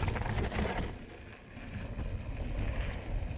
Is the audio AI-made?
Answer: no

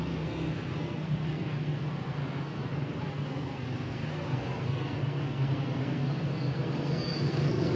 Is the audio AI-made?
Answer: yes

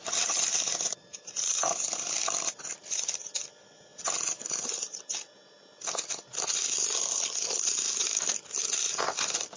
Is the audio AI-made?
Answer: no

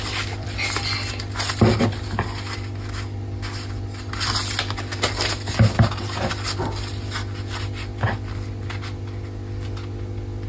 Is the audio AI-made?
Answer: no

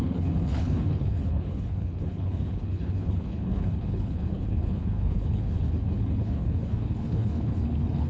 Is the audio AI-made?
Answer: yes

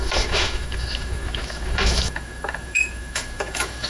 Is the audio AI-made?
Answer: yes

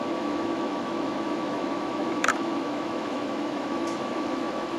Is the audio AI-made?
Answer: yes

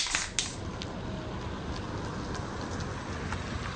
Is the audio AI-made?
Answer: no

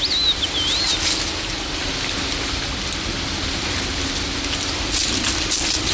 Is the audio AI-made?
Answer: no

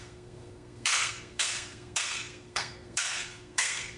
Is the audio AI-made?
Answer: yes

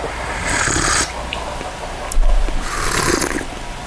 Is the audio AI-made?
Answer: no